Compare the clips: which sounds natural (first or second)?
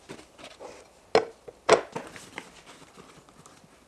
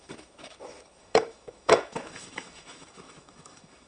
first